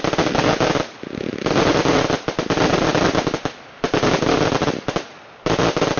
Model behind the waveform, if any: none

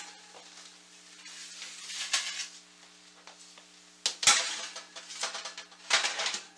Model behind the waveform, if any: none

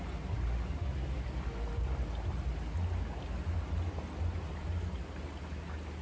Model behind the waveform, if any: none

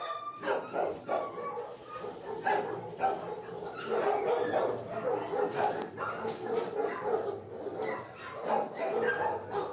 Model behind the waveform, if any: none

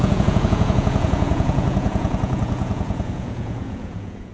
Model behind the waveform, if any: vocoder, Vocos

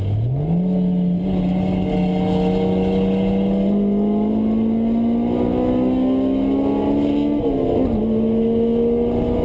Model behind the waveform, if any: none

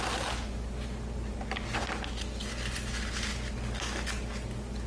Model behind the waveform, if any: none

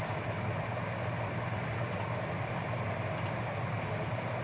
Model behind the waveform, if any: none